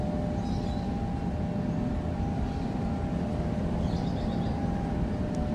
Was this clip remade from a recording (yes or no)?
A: no